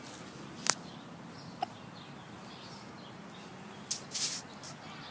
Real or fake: real